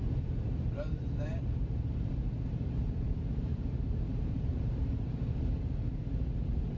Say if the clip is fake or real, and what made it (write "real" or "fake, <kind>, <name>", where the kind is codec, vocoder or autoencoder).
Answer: fake, vocoder, BigVGAN v2